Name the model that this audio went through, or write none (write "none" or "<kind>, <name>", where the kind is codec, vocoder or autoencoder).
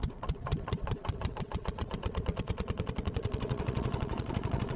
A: vocoder, WaveNeXt